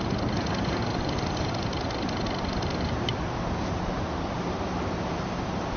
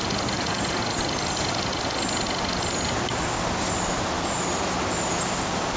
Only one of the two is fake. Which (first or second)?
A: first